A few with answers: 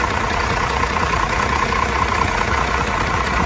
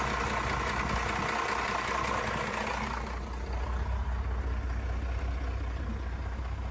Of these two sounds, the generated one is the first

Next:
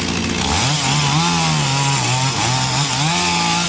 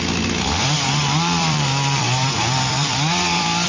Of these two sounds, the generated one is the second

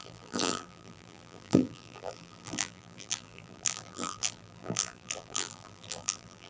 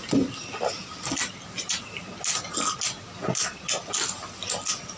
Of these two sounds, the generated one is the first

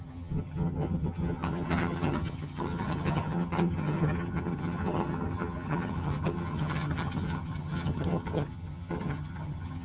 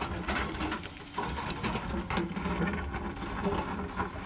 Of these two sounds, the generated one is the first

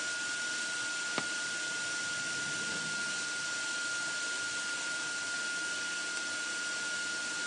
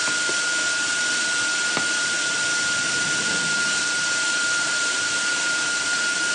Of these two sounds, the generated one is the second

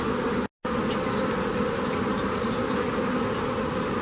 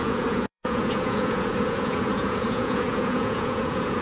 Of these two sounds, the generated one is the second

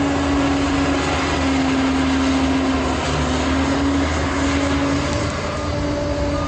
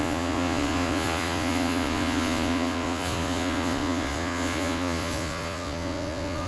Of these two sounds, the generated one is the second